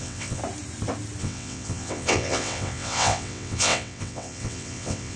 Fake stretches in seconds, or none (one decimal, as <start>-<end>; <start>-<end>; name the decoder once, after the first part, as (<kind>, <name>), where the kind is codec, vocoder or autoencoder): 0.0-0.4 (vocoder, WaveNeXt); 1.2-5.2